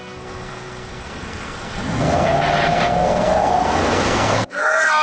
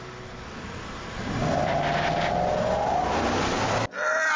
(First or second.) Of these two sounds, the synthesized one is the first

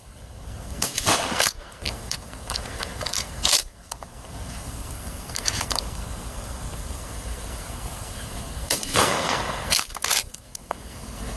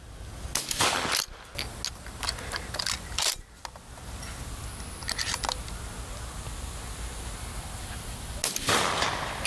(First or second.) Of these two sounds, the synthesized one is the first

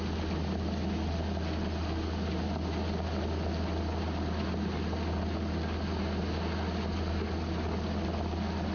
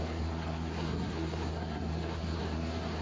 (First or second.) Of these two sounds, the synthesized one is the second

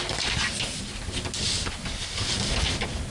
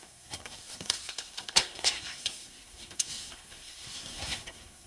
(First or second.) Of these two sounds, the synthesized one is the second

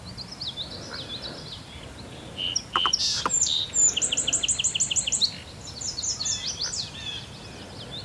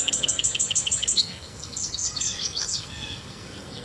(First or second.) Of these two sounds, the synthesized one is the second